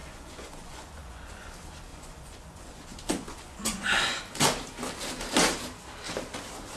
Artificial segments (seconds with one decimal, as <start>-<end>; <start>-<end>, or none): 0.0-1.5; 1.9-4.2